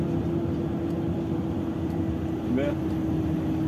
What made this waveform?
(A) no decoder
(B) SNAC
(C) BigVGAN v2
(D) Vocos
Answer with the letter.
A